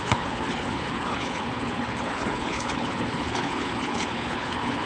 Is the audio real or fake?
fake